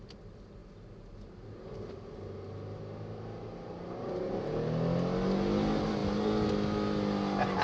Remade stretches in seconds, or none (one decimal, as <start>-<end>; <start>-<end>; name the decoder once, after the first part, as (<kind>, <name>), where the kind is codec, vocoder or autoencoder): none